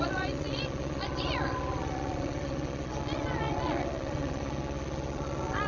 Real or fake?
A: fake